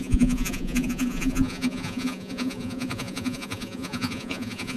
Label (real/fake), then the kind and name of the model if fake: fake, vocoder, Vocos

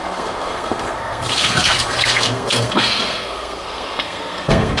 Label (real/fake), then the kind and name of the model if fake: fake, codec, SNAC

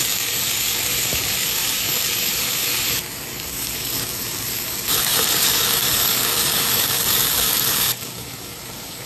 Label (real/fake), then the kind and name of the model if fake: fake, codec, DAC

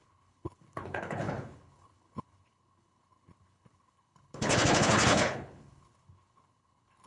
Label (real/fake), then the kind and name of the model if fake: fake, codec, HILCodec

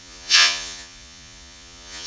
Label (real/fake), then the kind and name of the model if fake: fake, vocoder, Vocos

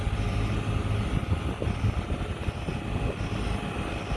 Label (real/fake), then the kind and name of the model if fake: real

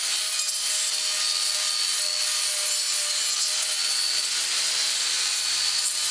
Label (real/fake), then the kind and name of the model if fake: real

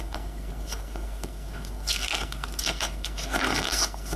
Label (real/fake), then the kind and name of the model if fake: fake, codec, SNAC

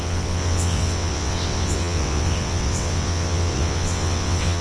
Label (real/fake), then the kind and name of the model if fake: fake, vocoder, WaveNeXt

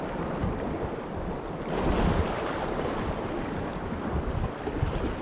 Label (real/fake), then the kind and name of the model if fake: fake, vocoder, BigVGAN v2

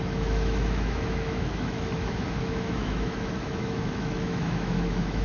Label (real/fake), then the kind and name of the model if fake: fake, autoencoder, DAC-VAE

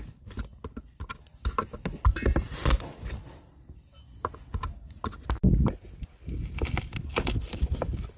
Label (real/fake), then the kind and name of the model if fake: real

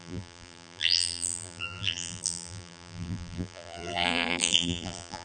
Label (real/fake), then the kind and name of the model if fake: fake, vocoder, BigVGAN v2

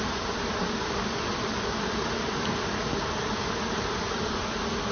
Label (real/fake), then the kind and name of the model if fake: real